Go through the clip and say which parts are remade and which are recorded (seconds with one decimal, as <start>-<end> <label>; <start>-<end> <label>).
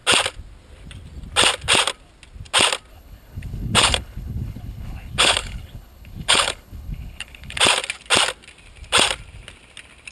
0.0-2.9 recorded; 2.9-7.6 remade; 7.6-10.1 recorded